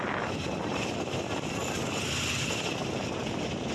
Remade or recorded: recorded